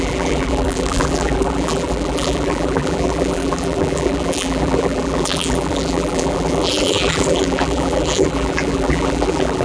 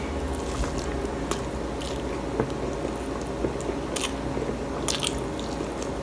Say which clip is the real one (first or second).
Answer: second